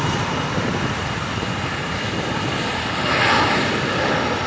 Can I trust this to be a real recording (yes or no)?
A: yes